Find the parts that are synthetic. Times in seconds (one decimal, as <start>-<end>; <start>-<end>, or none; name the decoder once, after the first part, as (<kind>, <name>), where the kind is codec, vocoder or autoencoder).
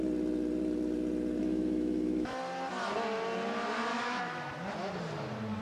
1.4-2.4 (autoencoder, DAC-VAE); 3.9-4.5